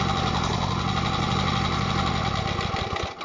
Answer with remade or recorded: recorded